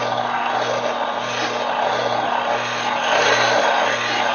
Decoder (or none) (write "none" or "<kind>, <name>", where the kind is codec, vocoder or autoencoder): none